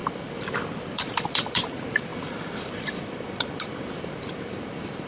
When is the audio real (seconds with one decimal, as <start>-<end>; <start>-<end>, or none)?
0.0-0.8; 2.1-4.0